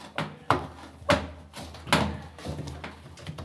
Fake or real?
real